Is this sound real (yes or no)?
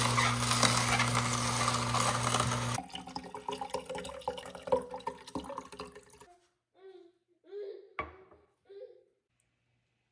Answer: yes